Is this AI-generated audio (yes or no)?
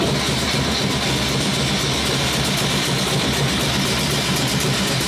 no